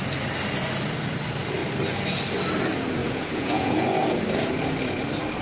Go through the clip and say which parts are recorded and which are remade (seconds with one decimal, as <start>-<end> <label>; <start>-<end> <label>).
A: 0.0-3.0 recorded; 3.0-4.2 remade; 4.2-5.4 recorded